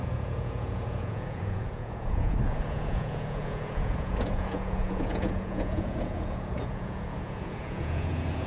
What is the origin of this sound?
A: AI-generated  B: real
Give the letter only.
A